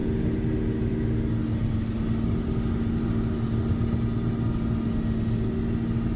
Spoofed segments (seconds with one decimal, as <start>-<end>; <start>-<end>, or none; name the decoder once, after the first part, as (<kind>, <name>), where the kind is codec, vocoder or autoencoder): none